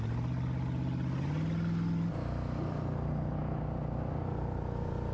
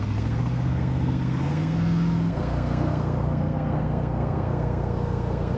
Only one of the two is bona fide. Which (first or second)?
first